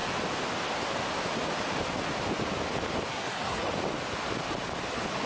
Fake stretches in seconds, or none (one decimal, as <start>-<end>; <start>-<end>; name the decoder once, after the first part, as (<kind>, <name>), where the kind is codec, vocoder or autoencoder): 3.1-3.7 (codec, SNAC)